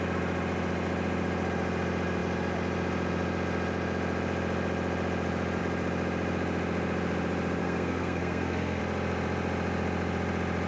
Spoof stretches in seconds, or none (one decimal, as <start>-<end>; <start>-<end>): 7.6-8.8